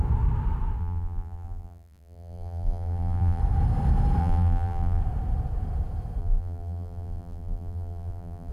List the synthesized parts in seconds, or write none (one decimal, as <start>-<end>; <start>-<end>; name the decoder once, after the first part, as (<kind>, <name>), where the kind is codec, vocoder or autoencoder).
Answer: 0.8-3.4 (vocoder, BigVGAN v2); 4.2-5.0; 6.2-8.5